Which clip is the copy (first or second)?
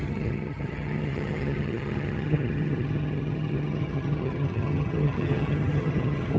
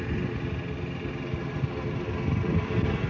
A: first